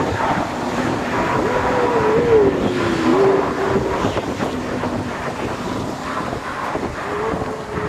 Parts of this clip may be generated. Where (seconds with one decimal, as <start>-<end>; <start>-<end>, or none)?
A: none